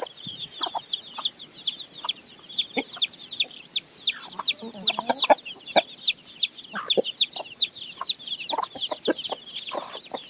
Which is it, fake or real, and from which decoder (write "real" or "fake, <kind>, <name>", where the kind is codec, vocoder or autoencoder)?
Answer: real